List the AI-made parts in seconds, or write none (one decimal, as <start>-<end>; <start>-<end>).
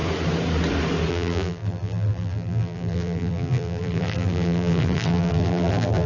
1.1-6.1